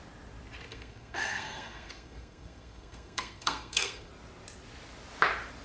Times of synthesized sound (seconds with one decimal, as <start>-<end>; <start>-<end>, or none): 0.7-4.1